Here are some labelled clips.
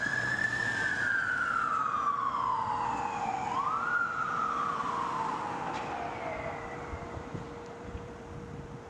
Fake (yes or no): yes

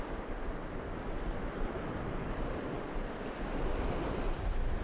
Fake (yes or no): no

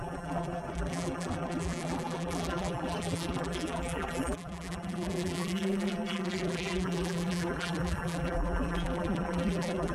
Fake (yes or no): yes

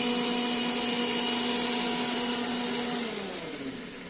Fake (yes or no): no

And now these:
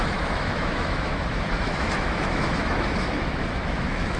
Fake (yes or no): yes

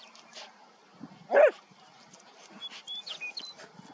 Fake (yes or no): no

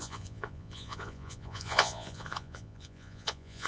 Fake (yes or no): yes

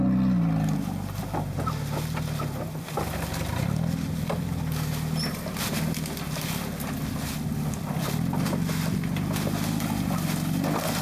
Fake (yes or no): no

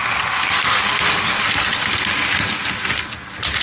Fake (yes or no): no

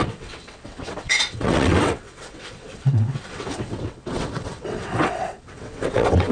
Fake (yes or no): yes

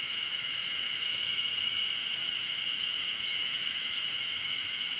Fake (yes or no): yes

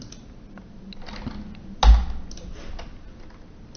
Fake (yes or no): no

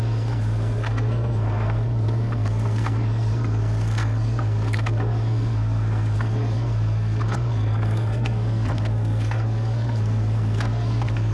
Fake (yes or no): yes